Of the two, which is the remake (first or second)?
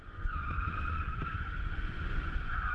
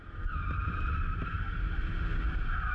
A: first